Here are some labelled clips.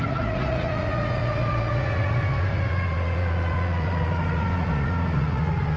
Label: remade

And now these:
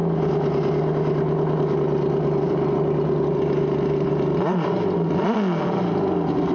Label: recorded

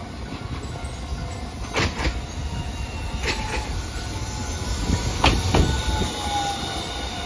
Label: recorded